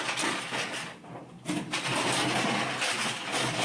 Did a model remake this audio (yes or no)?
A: no